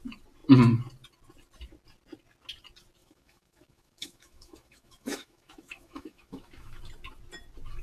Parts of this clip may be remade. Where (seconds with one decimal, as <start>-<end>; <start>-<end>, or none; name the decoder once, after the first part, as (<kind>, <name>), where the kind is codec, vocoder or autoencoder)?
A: 3.0-6.8 (autoencoder, DAC-VAE)